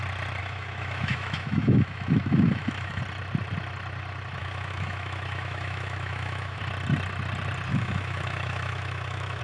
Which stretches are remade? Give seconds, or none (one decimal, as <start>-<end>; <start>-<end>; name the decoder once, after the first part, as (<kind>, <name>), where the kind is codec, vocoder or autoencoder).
0.4-3.0 (autoencoder, DAC-VAE); 4.4-6.6; 7.7-9.4

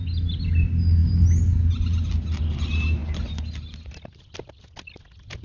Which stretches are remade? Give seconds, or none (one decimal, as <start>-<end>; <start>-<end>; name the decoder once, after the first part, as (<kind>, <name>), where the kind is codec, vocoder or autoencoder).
none

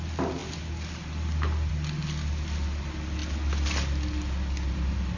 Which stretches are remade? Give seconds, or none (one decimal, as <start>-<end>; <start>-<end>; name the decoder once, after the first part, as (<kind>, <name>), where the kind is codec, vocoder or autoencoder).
none

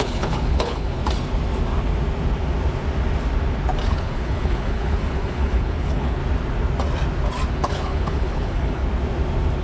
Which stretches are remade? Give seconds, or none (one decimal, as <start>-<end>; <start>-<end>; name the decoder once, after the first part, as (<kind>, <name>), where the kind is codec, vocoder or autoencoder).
0.0-1.0 (codec, HILCodec); 3.9-6.2; 7.5-8.8

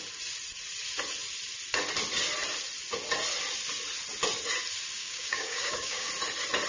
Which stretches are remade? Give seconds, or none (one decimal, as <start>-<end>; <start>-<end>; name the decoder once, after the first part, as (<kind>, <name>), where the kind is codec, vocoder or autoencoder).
5.0-6.1 (codec, DAC)